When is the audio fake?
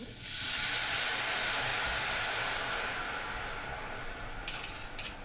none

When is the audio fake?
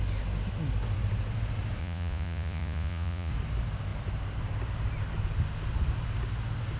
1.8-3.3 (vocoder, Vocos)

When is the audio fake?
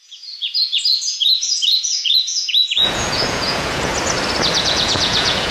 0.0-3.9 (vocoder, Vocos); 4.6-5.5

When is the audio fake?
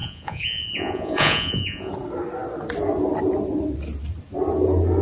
0.0-1.9 (vocoder, Vocos)